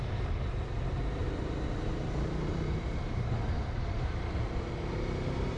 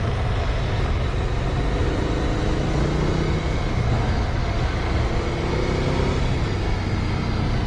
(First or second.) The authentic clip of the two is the second